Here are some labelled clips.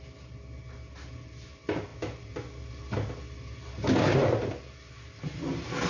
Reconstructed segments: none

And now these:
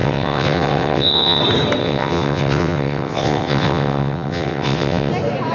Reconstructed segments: 0.0-1.4 (vocoder, WaveNeXt); 1.8-5.1

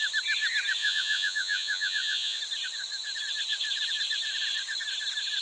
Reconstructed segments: 0.8-2.4 (vocoder, Vocos)